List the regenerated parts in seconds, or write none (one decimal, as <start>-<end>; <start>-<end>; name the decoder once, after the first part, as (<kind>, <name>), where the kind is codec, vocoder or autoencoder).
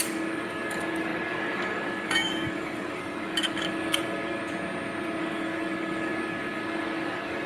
0.0-4.4 (codec, DAC); 5.2-7.5